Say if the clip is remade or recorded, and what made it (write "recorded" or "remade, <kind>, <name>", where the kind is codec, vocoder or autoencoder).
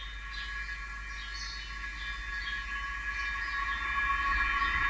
recorded